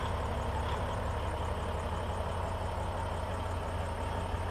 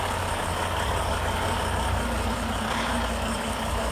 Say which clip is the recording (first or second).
first